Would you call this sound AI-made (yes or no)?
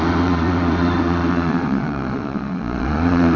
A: yes